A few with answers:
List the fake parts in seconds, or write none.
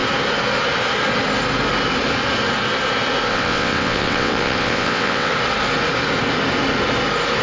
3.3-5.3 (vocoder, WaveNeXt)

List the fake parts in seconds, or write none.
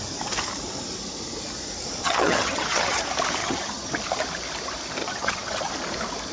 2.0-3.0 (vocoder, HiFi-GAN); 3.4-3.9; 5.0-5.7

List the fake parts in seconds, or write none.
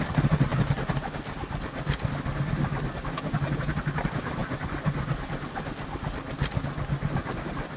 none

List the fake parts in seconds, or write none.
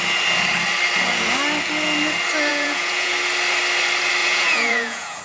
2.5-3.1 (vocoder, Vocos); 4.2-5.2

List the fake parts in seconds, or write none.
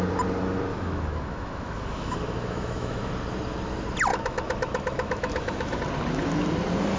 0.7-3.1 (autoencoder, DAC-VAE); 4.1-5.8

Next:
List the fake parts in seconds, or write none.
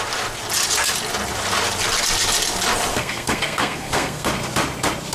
2.9-4.3 (codec, SNAC)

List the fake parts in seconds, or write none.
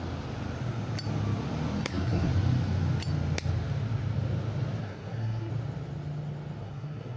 1.8-2.3 (codec, SNAC); 4.8-5.5; 6.6-7.2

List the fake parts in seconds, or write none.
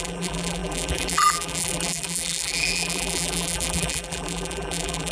0.0-5.1 (vocoder, BigVGAN v2)